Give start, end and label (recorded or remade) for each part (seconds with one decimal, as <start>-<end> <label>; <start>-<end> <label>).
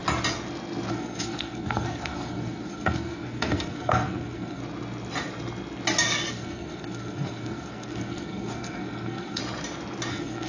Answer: 0.0-0.9 recorded; 0.9-4.6 remade; 4.6-6.3 recorded; 6.3-9.4 remade; 9.4-10.1 recorded; 10.1-10.5 remade